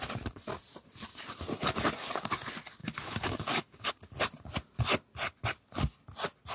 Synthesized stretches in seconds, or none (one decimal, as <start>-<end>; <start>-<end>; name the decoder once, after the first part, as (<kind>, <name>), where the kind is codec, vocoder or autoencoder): 2.8-3.9 (codec, DAC)